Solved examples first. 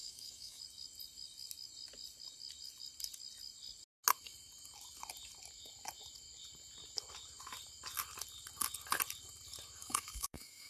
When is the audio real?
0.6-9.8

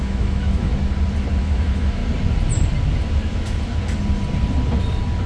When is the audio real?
0.7-1.4; 2.0-5.3

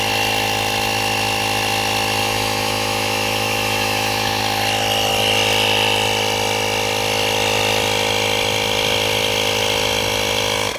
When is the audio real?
0.0-2.2; 4.4-10.8

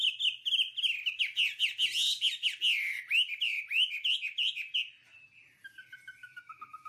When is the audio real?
0.0-6.2